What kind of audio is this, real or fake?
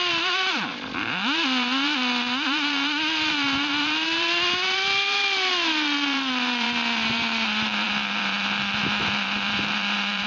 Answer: fake